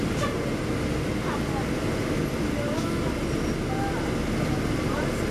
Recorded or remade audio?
recorded